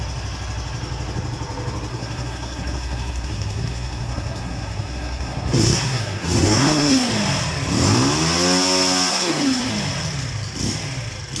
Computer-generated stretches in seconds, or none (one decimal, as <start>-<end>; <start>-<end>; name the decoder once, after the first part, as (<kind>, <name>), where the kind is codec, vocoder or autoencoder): 1.9-7.1 (codec, SNAC); 9.1-9.7